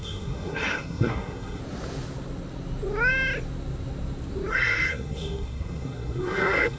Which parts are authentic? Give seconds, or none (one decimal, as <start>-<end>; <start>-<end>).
1.6-4.5